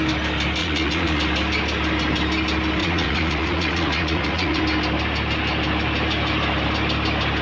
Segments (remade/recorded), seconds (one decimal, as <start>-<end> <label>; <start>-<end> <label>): 0.0-0.6 recorded; 0.6-1.2 remade; 1.2-2.8 recorded; 2.8-4.6 remade; 4.6-7.4 recorded